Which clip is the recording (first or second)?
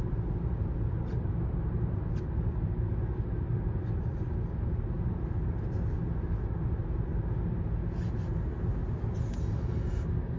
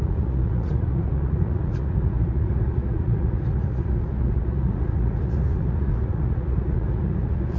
first